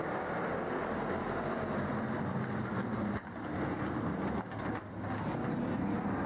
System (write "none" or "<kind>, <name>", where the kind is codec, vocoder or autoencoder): none